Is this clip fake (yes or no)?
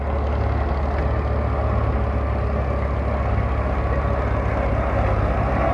no